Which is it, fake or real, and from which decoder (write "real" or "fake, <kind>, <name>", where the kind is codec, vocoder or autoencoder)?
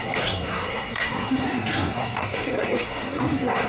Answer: fake, codec, SNAC